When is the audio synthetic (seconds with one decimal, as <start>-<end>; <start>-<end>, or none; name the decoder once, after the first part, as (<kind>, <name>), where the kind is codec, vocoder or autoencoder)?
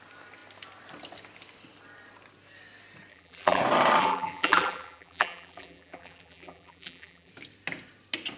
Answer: 3.1-3.6 (vocoder, BigVGAN v2); 4.0-7.3